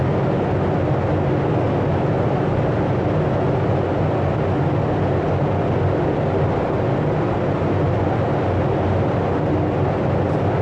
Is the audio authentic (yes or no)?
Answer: yes